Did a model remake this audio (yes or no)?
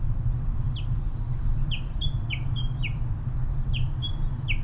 yes